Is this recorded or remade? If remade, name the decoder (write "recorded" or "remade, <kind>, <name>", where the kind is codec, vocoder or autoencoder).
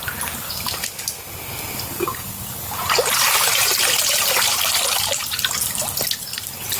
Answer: recorded